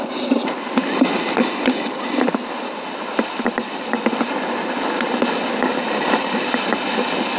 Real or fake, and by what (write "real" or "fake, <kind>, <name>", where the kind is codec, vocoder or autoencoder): real